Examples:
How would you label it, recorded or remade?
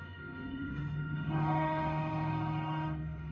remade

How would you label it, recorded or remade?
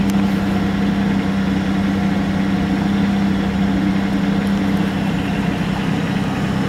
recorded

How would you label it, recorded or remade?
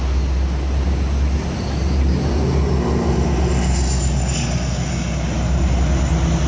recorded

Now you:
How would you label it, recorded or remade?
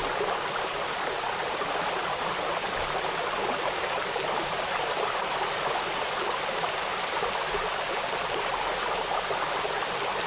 recorded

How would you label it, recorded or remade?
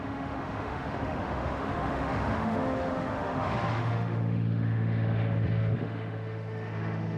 remade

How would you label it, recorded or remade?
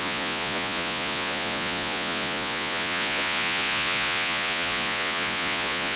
remade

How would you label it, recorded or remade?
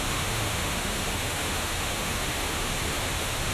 remade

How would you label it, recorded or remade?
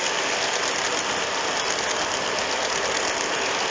recorded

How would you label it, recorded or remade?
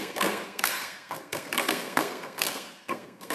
remade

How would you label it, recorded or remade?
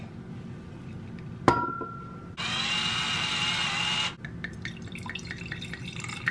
recorded